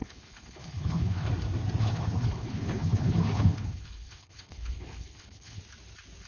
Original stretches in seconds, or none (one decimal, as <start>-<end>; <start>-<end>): 1.3-1.8; 5.6-6.3